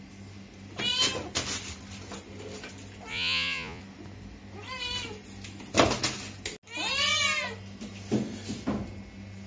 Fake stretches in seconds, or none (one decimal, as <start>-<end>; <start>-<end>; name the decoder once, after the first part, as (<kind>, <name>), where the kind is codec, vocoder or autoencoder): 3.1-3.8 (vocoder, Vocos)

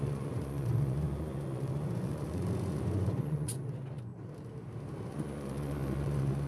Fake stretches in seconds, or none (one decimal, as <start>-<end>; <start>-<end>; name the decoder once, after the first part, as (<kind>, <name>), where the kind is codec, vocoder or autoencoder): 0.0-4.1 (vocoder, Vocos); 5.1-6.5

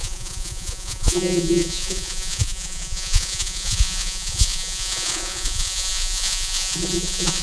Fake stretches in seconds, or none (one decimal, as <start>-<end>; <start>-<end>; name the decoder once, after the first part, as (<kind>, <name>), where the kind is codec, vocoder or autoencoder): 0.0-7.4 (vocoder, Vocos)